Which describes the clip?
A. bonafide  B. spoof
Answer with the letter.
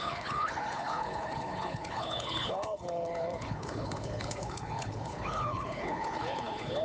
B